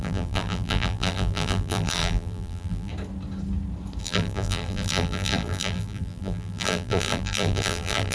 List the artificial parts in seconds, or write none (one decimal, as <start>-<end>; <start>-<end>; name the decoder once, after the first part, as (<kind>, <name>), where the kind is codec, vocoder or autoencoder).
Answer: 0.0-2.9 (vocoder, BigVGAN v2); 4.0-8.1